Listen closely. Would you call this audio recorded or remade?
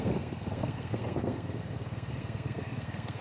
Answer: remade